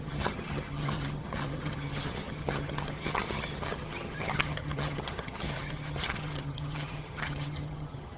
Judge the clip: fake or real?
fake